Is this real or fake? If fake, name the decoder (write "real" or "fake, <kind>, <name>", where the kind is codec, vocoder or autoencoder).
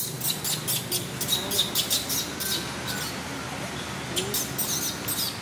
real